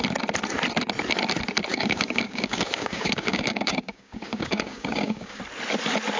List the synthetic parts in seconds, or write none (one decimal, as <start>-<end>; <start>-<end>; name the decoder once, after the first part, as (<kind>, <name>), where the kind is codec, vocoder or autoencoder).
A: 1.7-5.4 (codec, DAC)